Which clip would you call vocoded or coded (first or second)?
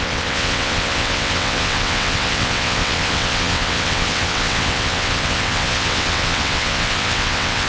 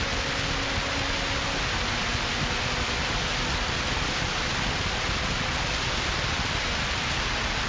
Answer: first